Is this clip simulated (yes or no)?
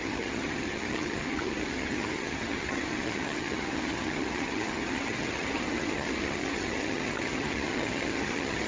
yes